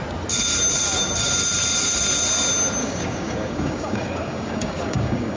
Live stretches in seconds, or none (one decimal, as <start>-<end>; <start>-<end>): 0.0-2.8